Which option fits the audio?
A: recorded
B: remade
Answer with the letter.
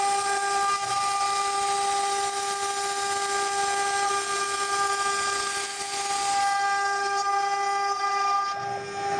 A